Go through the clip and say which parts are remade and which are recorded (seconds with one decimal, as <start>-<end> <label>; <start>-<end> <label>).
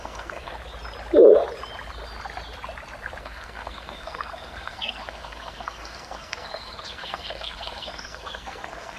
0.0-0.6 remade; 0.6-3.2 recorded; 3.2-9.0 remade